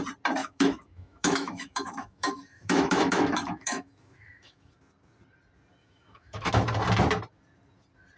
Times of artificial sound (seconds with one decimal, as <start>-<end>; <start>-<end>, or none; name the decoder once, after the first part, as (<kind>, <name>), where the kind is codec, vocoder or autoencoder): 0.4-4.7 (autoencoder, DAC-VAE); 5.8-6.5